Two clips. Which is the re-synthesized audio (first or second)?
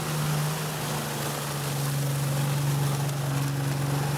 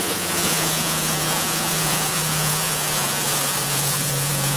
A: second